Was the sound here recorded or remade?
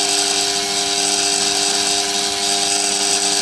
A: recorded